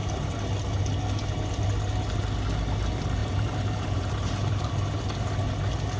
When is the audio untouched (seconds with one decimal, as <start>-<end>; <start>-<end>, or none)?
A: 0.0-3.2; 5.0-6.0